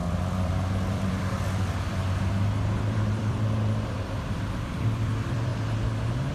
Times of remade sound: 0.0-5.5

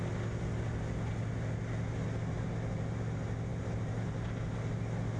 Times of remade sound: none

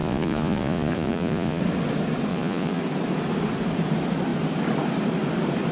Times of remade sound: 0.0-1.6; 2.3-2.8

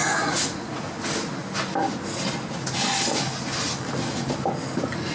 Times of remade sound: 0.0-0.8

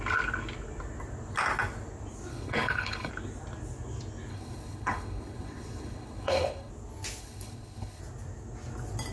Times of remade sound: 2.3-3.1; 4.3-6.7; 7.2-8.0

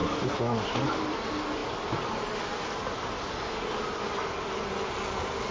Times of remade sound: none

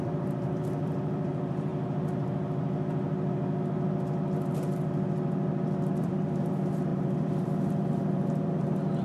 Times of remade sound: 0.0-1.7; 6.0-9.0